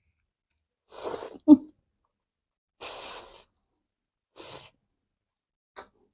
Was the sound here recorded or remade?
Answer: recorded